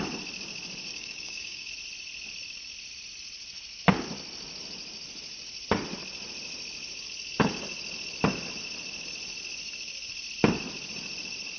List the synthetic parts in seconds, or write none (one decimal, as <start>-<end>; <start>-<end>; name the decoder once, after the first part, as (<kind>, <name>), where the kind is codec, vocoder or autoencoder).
0.9-1.7 (codec, DAC)